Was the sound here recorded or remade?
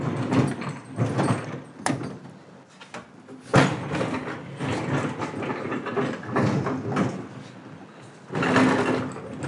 recorded